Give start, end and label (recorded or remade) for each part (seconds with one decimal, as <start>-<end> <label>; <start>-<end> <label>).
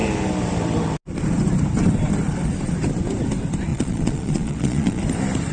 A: 0.0-3.7 recorded; 3.7-5.0 remade; 5.0-5.5 recorded